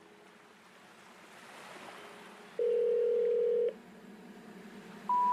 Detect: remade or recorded recorded